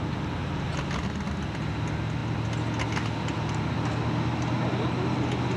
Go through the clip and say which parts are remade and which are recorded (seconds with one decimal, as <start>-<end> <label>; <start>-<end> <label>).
0.0-5.6 recorded

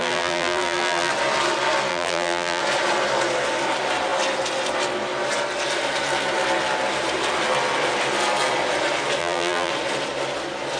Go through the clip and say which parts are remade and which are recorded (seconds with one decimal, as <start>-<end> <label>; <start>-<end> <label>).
0.0-1.1 remade; 1.1-1.9 recorded; 1.9-2.6 remade; 2.6-9.2 recorded; 9.2-9.7 remade; 9.7-10.8 recorded

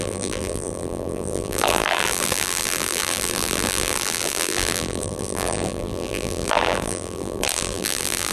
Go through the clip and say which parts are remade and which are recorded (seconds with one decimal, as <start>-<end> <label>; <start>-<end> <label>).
0.0-8.3 remade